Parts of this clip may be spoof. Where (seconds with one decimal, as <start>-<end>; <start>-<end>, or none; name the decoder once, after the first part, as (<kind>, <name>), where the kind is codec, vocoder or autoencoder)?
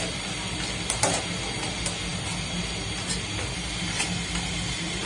none